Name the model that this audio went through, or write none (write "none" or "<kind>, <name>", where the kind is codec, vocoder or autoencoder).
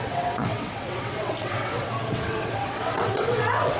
vocoder, WaveNeXt